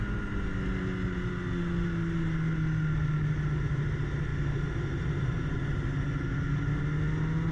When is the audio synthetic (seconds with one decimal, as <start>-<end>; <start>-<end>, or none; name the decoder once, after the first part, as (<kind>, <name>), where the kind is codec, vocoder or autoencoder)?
none